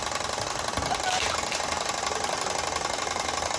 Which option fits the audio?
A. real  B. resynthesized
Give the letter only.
A